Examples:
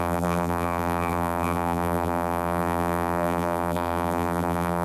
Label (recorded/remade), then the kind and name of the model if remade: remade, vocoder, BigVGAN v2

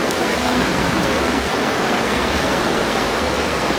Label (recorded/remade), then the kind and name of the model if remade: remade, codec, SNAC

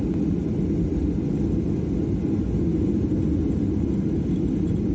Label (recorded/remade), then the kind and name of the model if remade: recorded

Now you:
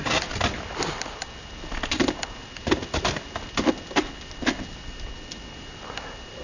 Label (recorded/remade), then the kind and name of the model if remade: recorded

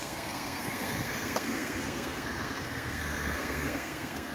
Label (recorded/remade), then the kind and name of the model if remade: remade, codec, SNAC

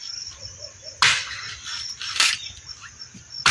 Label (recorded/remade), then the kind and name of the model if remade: recorded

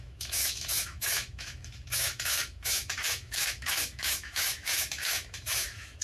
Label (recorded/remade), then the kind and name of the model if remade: remade, autoencoder, DAC-VAE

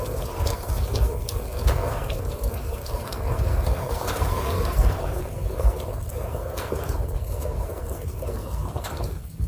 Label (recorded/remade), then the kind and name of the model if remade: remade, codec, SNAC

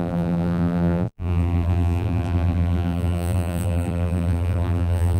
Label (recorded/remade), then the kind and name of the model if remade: remade, vocoder, BigVGAN v2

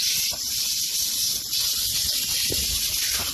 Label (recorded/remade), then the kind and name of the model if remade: remade, vocoder, BigVGAN v2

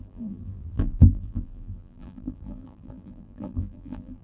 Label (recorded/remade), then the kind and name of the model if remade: remade, vocoder, BigVGAN v2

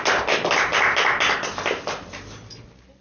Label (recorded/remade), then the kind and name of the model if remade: recorded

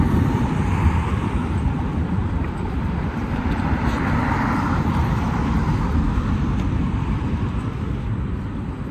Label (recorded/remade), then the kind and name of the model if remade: remade, vocoder, BigVGAN v2